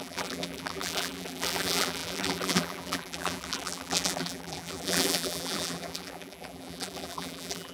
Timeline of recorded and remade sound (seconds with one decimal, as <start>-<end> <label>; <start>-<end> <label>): 0.0-7.7 remade